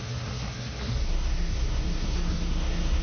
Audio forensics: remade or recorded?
remade